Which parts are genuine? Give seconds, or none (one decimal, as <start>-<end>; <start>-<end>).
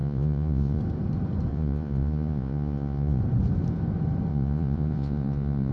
0.8-1.5; 3.2-4.3